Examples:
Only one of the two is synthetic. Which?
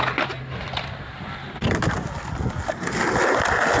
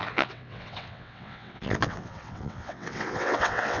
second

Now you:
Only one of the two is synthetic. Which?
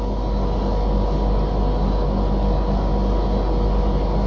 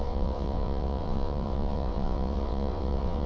second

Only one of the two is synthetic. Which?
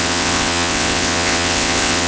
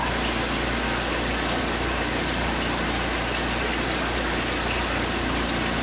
first